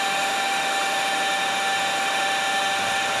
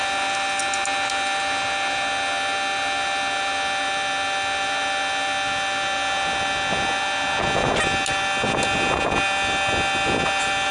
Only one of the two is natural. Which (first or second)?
second